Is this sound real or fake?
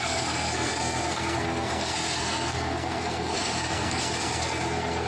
fake